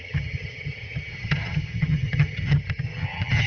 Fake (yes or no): yes